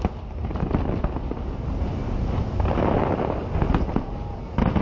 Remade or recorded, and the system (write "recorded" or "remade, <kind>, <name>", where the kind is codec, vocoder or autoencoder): recorded